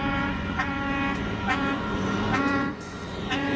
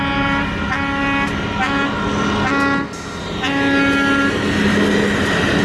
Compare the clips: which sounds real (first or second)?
second